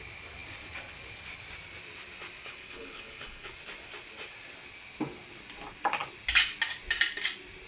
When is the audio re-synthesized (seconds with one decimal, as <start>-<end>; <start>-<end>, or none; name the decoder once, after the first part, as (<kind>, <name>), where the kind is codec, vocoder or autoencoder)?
2.5-3.5 (codec, HILCodec)